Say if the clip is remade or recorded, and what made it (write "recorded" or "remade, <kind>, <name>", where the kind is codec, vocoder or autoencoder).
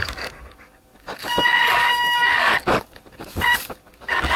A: remade, codec, DAC